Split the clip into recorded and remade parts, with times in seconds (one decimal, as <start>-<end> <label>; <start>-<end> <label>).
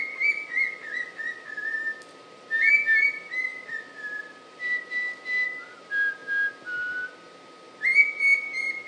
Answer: 0.0-8.9 recorded